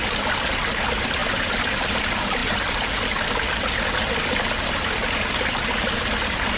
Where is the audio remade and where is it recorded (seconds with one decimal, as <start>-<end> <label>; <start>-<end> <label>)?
0.0-6.6 recorded